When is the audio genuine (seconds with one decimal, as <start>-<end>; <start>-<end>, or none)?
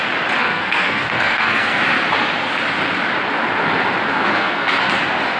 0.0-0.4; 1.8-4.1; 5.0-5.4